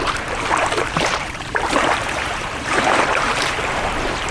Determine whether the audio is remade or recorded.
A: remade